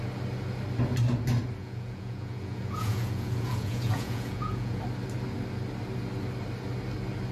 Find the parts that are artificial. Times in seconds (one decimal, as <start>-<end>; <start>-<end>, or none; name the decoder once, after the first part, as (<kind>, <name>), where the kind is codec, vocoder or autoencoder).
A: 1.6-4.8 (vocoder, Vocos)